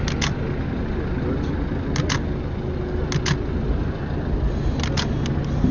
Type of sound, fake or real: real